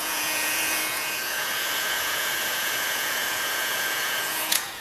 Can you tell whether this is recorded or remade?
remade